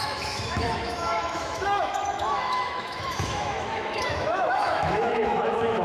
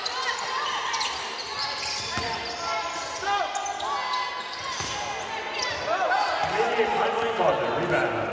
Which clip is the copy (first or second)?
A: first